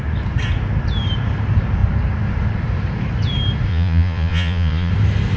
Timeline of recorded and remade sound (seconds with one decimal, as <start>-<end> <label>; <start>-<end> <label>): 0.0-3.7 recorded; 3.7-4.9 remade; 4.9-5.4 recorded